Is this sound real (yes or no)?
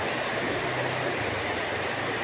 yes